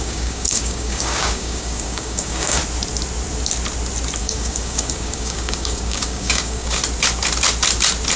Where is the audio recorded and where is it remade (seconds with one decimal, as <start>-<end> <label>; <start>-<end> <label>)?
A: 0.0-2.6 remade; 2.6-4.2 recorded; 4.2-6.8 remade; 6.8-8.2 recorded